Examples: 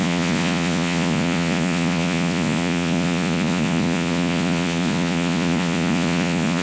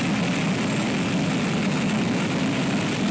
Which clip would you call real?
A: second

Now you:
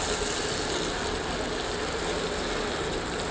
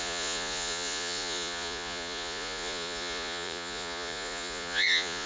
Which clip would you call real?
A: first